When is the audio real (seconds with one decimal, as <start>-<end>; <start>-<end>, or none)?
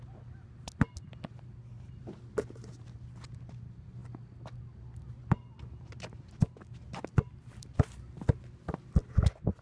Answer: 0.0-9.6